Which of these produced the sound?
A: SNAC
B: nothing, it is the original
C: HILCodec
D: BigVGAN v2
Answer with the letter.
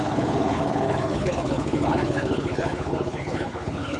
C